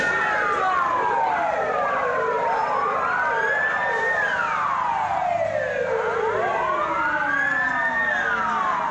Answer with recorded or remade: recorded